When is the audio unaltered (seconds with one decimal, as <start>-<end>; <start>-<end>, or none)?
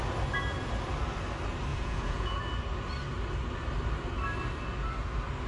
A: 0.0-1.7; 2.4-5.5